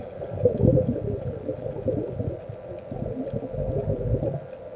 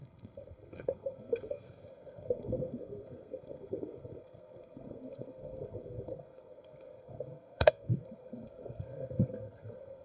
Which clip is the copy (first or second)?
second